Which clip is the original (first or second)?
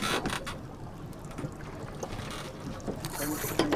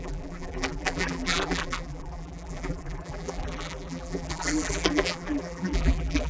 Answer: first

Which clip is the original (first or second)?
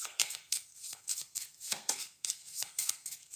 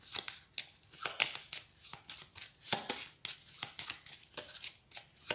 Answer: second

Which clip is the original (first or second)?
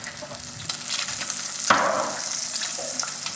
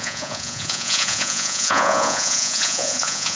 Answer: first